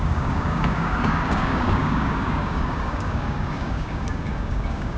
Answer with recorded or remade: remade